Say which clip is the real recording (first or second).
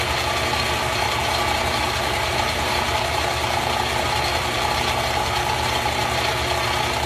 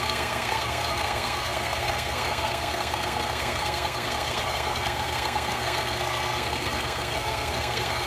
first